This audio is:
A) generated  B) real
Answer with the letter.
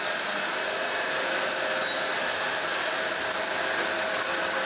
B